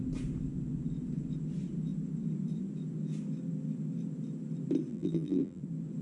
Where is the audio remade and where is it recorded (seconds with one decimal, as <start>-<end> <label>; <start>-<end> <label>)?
0.0-4.9 recorded; 4.9-5.6 remade; 5.6-6.0 recorded